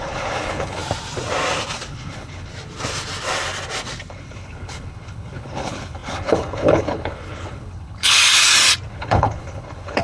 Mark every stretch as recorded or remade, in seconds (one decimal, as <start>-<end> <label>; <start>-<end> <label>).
0.0-0.8 remade; 0.8-1.9 recorded; 1.9-2.5 remade; 2.5-4.1 recorded; 4.1-8.2 remade; 8.2-8.9 recorded; 8.9-10.0 remade